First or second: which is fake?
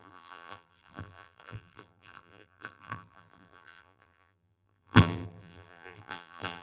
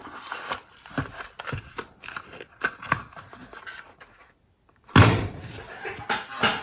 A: first